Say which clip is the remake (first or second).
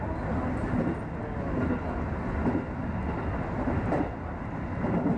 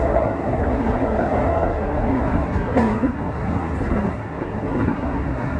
second